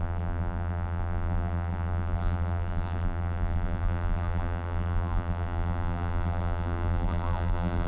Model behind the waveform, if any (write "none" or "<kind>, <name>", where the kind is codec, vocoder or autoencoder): vocoder, BigVGAN v2